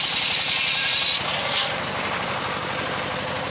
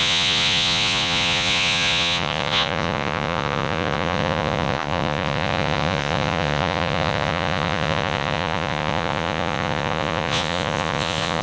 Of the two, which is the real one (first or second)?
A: first